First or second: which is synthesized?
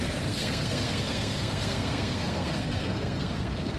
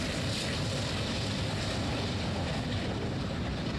first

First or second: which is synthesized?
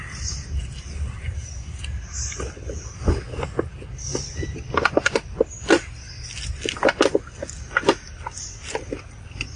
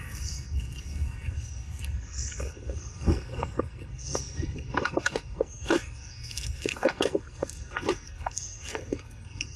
second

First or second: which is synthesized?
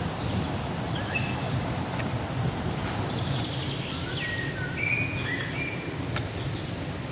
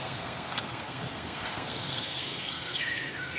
second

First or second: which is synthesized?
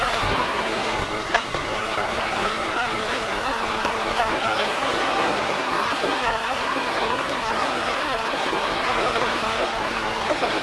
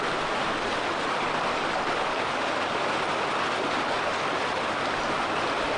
first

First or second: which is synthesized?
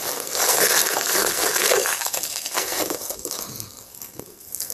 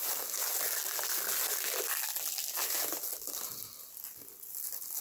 first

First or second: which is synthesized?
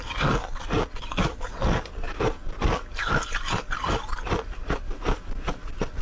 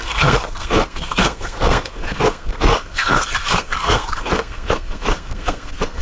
second